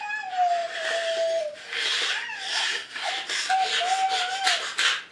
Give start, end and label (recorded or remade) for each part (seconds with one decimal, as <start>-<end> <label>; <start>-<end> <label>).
0.0-2.5 recorded; 2.5-3.1 remade; 3.1-5.1 recorded